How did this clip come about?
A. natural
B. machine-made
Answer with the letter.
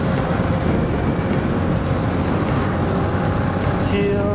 A